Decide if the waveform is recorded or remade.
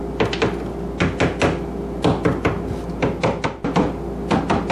recorded